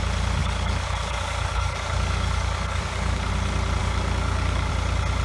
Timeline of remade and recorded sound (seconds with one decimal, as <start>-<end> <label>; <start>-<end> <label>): 0.0-0.4 recorded; 0.4-3.3 remade; 3.3-3.8 recorded; 3.8-4.7 remade; 4.7-5.2 recorded

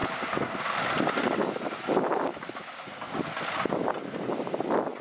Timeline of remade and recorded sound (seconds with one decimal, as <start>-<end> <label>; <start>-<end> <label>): 0.0-5.0 recorded

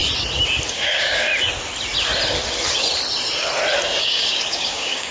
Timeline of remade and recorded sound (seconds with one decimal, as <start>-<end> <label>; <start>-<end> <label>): 0.0-0.7 recorded; 0.7-1.3 remade; 1.3-4.0 recorded; 4.0-5.1 remade

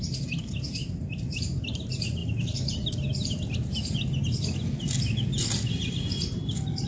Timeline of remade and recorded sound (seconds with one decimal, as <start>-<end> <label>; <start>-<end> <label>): 0.0-6.9 recorded

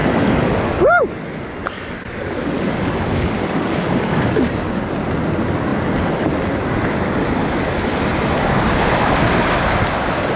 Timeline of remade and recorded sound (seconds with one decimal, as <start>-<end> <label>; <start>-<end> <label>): 0.0-4.9 remade; 4.9-10.4 recorded

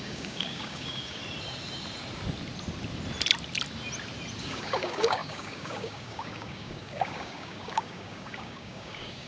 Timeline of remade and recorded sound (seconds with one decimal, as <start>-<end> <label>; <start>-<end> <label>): 0.0-1.2 remade; 1.2-4.4 recorded; 4.4-9.3 remade

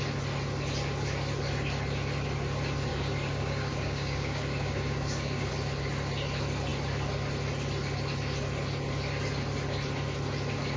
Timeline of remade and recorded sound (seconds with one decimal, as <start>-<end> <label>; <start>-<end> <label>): 0.0-2.9 recorded; 2.9-5.5 remade; 5.5-10.8 recorded